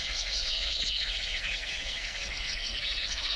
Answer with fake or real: fake